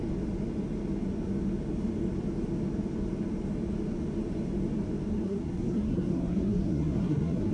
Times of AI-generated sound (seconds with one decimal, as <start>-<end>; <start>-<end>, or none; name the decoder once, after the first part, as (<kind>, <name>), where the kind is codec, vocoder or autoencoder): 5.1-7.5 (codec, SNAC)